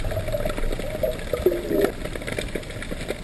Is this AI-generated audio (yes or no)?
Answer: no